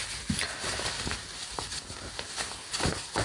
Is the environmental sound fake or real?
real